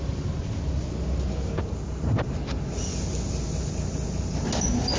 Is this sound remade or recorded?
recorded